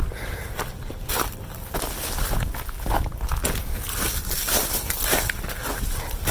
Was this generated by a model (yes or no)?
no